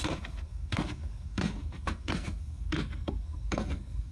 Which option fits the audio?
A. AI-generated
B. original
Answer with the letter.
A